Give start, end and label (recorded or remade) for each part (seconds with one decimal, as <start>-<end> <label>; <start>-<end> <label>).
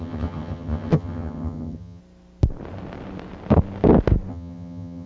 0.0-2.0 remade; 2.0-4.3 recorded; 4.3-5.1 remade